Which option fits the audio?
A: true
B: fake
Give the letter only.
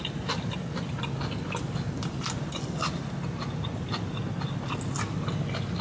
A